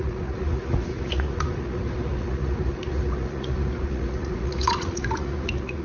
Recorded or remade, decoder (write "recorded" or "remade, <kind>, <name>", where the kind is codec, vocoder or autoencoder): remade, vocoder, Vocos